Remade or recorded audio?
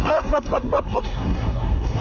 remade